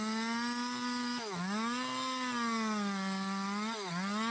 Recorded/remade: recorded